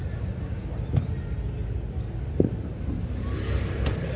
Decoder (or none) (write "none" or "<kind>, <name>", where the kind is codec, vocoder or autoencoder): none